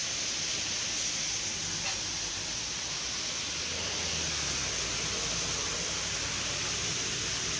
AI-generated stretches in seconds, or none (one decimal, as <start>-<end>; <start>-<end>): none